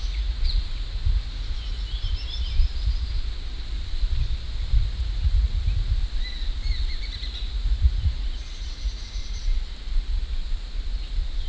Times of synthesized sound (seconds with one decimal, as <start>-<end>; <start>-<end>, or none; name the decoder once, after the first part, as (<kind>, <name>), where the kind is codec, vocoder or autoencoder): 0.0-2.0 (vocoder, Vocos); 5.0-6.0; 7.0-9.2